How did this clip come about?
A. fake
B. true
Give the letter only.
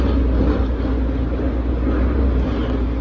B